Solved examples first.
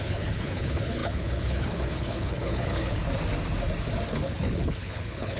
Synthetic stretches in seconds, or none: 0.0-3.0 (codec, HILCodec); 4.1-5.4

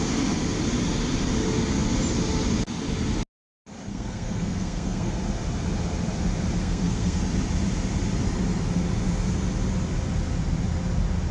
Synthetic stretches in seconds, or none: 3.9-5.1 (codec, SNAC); 6.6-7.2

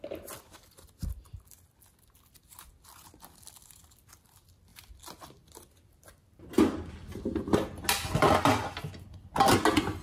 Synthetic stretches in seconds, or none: none